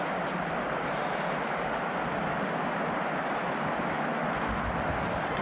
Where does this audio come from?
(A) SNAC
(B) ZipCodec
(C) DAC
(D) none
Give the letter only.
D